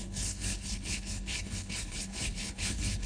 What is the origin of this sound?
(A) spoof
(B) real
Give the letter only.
A